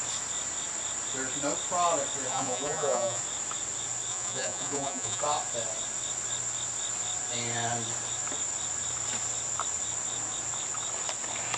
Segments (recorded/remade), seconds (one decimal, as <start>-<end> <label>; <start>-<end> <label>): 0.0-2.3 recorded; 2.3-3.2 remade; 3.2-4.1 recorded; 4.1-5.2 remade; 5.2-11.6 recorded

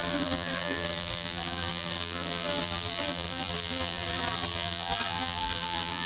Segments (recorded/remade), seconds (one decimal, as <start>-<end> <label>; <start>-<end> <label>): 0.0-6.1 remade

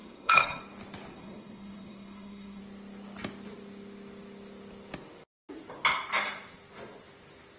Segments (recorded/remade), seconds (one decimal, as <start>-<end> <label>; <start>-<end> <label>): 0.0-0.6 remade; 0.6-1.1 recorded; 1.1-2.6 remade; 2.6-7.6 recorded

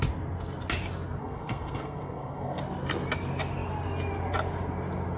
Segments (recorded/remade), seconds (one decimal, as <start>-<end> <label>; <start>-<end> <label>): 0.0-1.2 recorded; 1.2-2.6 remade; 2.6-5.2 recorded

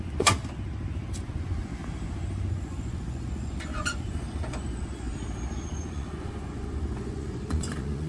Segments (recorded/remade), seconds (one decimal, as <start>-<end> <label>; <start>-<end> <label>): 0.0-0.4 remade; 0.4-1.2 recorded; 1.2-1.8 remade; 1.8-2.5 recorded; 2.5-5.1 remade; 5.1-5.8 recorded; 5.8-8.1 remade